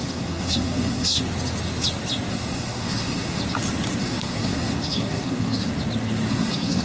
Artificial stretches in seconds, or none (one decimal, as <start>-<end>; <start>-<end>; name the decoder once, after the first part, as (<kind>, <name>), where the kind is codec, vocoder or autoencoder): 0.0-1.2 (codec, SNAC); 2.3-3.4; 4.0-5.7; 6.3-6.8